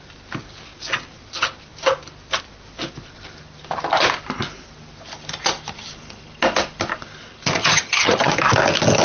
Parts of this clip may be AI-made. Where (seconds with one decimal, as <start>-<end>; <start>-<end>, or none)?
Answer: 7.6-8.3